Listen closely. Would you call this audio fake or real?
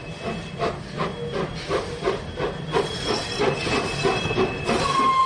real